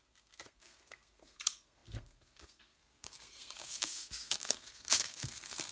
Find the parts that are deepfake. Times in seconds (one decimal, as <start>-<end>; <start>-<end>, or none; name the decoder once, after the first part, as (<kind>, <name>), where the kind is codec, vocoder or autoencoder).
0.0-5.7 (codec, SNAC)